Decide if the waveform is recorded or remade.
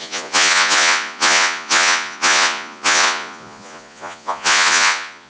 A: remade